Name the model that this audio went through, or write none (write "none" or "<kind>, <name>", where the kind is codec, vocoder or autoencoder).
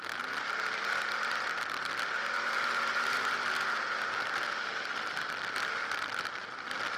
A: none